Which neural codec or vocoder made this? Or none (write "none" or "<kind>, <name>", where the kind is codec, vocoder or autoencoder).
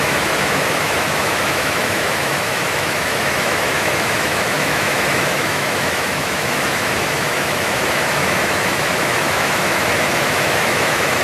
autoencoder, DAC-VAE